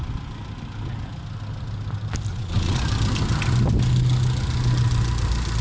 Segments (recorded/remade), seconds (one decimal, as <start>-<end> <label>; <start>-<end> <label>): 0.0-2.3 recorded; 2.3-2.8 remade; 2.8-5.6 recorded